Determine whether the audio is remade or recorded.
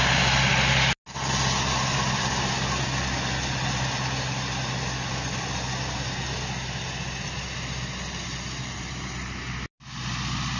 recorded